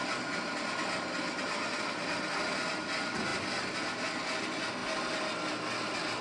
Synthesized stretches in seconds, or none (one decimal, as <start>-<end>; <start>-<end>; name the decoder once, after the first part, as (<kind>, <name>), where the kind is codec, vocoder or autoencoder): none